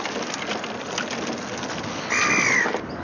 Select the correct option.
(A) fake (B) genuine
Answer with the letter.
B